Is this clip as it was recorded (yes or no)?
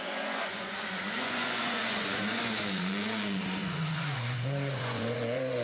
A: no